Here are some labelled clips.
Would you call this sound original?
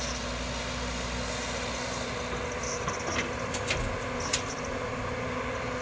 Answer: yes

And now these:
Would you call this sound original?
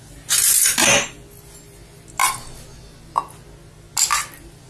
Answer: yes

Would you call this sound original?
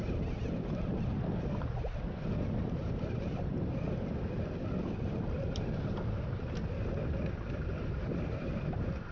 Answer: yes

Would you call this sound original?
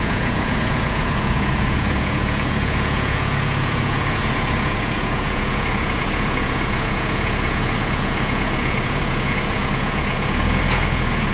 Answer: no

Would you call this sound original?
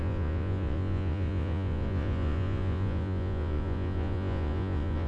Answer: no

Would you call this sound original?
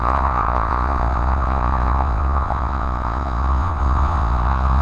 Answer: no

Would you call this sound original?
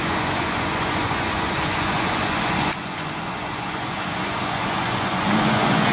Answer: no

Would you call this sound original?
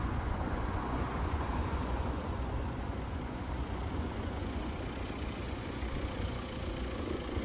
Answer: no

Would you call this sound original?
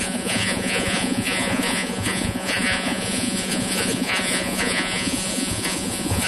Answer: no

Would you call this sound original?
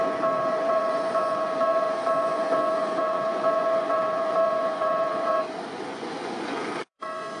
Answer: no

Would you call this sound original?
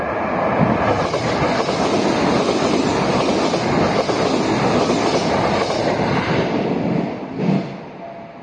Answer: yes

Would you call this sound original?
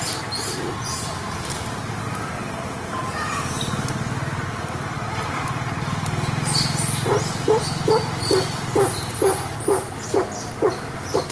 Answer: yes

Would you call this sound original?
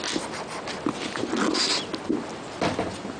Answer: yes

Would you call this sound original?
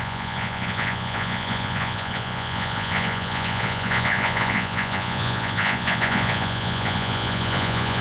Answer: no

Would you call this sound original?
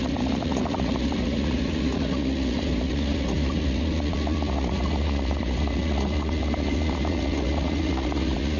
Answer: no